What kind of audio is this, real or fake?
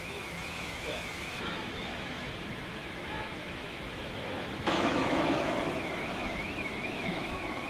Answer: fake